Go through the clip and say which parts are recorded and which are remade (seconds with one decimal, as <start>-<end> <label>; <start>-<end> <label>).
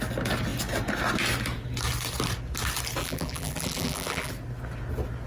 0.0-3.0 recorded; 3.0-4.3 remade; 4.3-5.3 recorded